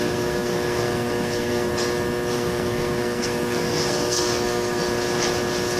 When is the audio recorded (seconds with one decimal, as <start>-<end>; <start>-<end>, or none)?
1.7-2.3; 4.8-5.8